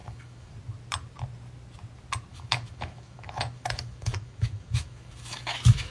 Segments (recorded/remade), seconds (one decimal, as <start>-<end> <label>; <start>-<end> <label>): 0.0-0.5 remade; 0.5-2.3 recorded; 2.3-5.9 remade